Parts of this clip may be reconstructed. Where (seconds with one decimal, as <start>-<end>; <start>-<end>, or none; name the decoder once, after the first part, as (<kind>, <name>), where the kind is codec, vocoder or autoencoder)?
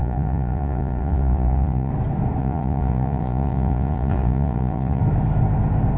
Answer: 0.0-1.9 (vocoder, Vocos); 2.4-5.0